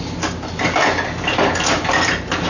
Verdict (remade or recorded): recorded